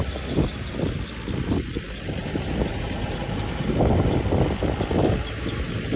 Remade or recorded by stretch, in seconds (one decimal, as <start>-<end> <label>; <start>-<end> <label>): 0.0-2.2 recorded; 2.2-4.2 remade; 4.2-6.0 recorded